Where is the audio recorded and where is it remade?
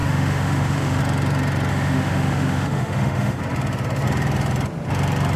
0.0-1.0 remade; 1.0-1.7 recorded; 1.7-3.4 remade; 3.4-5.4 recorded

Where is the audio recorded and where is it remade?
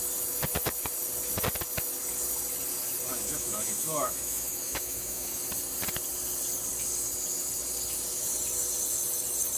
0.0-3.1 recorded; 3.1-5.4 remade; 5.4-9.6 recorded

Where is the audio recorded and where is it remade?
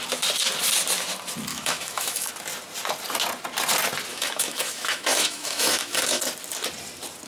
0.0-1.5 recorded; 1.5-2.3 remade; 2.3-4.1 recorded; 4.1-6.2 remade; 6.2-7.3 recorded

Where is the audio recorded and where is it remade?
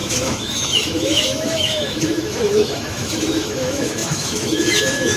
0.0-5.2 remade